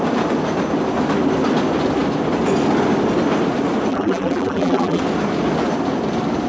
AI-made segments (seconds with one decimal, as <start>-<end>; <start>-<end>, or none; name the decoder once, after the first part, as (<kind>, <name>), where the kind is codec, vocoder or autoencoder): 3.9-5.0 (vocoder, BigVGAN v2)